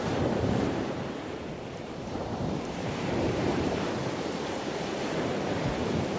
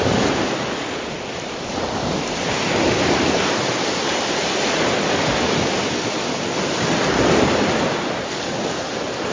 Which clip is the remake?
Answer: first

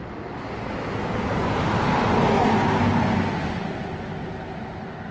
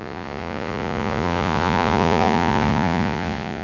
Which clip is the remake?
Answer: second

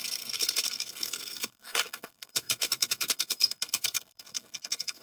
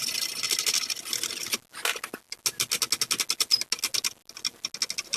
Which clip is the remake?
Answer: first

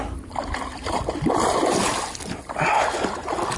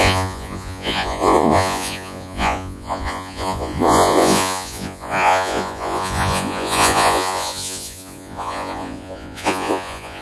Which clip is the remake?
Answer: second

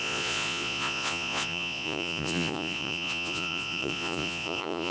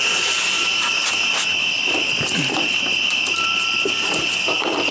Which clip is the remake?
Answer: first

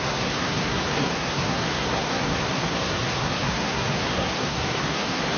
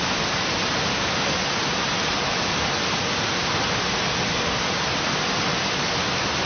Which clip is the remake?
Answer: first